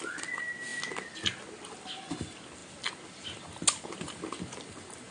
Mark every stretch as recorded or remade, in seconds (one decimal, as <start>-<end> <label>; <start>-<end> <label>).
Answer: 0.0-5.1 recorded